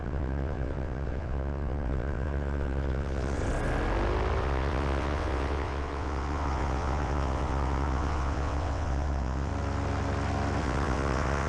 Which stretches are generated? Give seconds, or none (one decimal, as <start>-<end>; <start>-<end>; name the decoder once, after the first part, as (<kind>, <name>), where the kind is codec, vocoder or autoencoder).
0.0-3.4 (vocoder, WaveNeXt); 4.4-9.5; 10.6-11.5